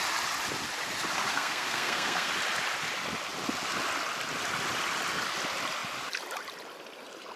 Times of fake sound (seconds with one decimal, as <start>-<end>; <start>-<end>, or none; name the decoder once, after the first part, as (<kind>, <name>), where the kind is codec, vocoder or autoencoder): 1.3-2.3 (codec, SNAC)